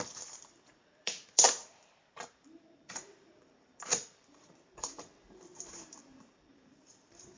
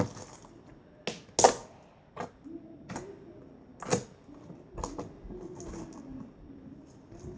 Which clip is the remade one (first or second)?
first